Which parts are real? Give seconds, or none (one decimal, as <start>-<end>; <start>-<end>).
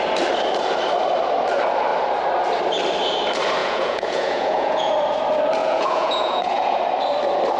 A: 0.0-3.6; 4.9-5.6; 6.8-7.6